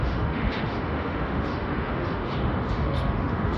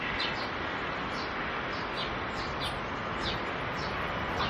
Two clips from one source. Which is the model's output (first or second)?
first